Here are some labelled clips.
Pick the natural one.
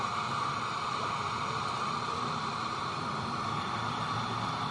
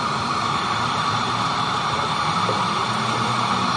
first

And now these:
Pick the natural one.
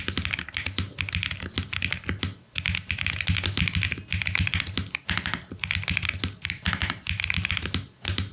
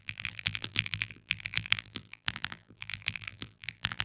first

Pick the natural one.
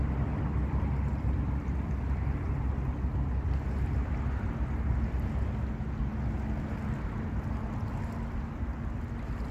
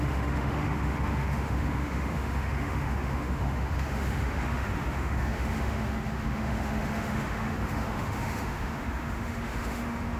first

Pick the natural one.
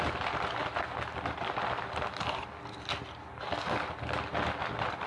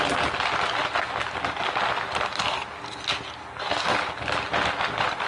second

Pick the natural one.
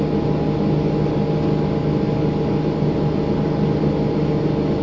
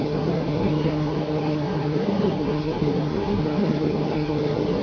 first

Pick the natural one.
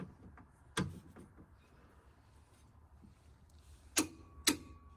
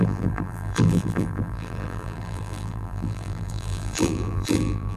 first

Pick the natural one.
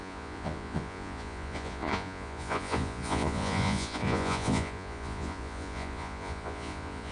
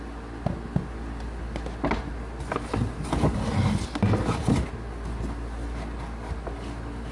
second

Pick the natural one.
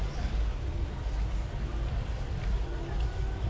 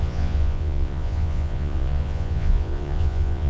first